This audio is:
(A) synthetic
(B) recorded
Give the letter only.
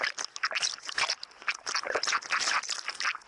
B